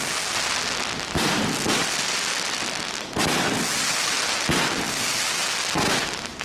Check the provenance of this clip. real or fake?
real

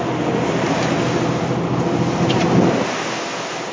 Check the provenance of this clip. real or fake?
real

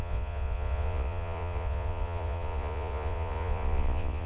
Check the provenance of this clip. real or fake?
fake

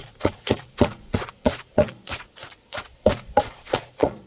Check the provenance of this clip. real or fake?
fake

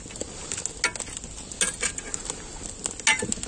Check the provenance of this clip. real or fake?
real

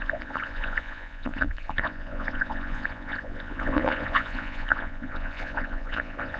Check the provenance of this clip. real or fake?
fake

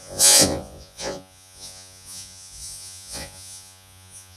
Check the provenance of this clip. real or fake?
fake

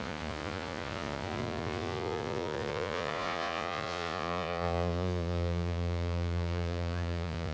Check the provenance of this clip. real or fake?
fake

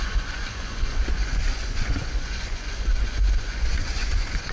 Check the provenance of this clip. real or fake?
fake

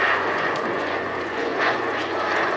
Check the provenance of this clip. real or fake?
fake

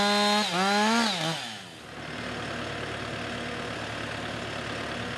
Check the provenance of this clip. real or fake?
real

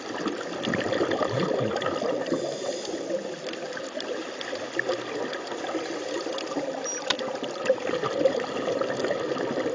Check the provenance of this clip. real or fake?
real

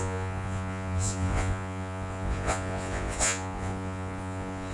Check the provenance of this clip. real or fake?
fake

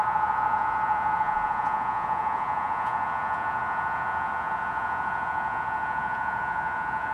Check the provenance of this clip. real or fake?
fake